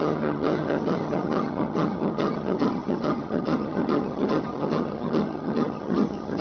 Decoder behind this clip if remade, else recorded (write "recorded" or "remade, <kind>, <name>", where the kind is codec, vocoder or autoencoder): remade, vocoder, HiFi-GAN